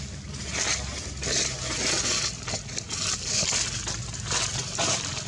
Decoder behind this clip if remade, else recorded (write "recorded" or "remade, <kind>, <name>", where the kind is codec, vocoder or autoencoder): recorded